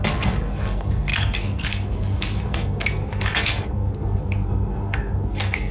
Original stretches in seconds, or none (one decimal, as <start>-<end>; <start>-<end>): none